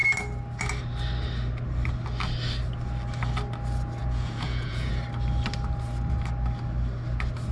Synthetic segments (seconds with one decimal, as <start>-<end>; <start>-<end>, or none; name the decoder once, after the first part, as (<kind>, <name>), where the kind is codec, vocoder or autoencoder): 4.0-4.9 (vocoder, Vocos)